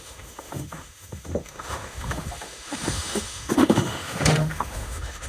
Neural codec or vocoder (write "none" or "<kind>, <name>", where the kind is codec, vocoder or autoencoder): autoencoder, DAC-VAE